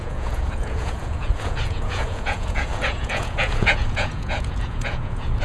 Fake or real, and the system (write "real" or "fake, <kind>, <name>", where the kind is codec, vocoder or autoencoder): fake, vocoder, Vocos